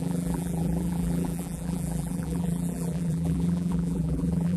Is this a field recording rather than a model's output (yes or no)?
no